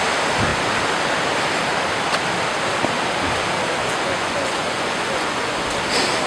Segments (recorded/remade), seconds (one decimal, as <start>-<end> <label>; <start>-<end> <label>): 0.0-3.8 recorded; 3.8-5.6 remade; 5.6-6.3 recorded